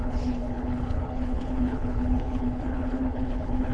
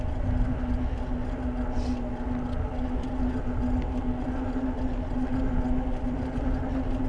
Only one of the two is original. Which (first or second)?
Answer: second